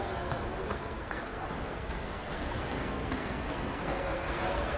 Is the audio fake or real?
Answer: fake